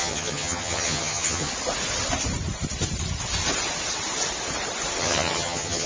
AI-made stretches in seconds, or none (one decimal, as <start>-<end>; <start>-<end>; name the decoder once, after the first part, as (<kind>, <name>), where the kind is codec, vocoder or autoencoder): 0.0-1.5 (vocoder, HiFi-GAN); 5.0-5.9